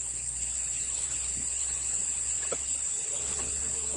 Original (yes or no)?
no